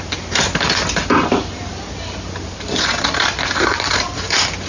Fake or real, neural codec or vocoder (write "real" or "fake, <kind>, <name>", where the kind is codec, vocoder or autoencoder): real